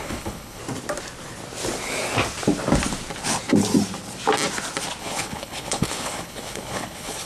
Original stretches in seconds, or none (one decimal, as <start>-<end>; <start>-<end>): 0.6-5.0